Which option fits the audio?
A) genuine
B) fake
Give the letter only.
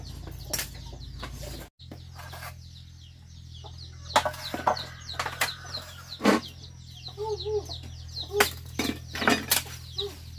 A